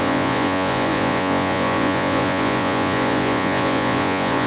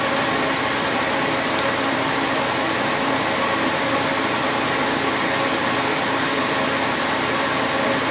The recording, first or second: second